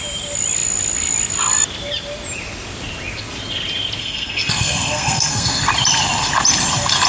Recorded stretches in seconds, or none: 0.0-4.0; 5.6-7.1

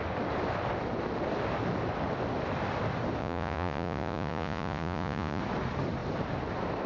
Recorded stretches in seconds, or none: 0.0-3.2; 5.4-6.9

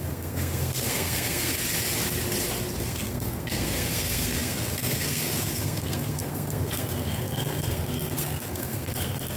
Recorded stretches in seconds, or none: 1.5-2.8